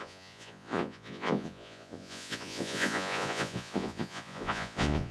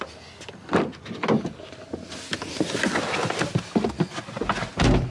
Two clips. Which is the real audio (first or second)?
second